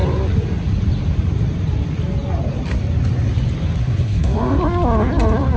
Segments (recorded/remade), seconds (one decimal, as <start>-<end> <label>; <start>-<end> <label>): 0.0-3.8 recorded; 3.8-4.6 remade; 4.6-5.6 recorded